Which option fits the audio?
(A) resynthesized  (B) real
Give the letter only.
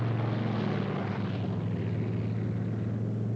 B